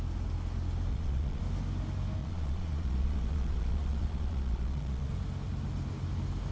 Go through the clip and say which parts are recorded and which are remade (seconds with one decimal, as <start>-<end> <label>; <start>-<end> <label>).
0.0-0.9 recorded; 0.9-1.4 remade; 1.4-2.2 recorded; 2.2-5.1 remade; 5.1-6.5 recorded